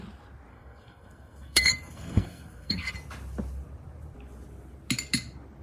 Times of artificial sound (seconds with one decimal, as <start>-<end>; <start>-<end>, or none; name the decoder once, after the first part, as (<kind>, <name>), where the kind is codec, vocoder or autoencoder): 0.5-2.9 (codec, SNAC)